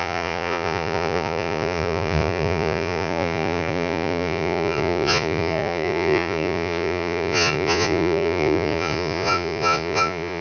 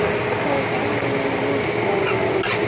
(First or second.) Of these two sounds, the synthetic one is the first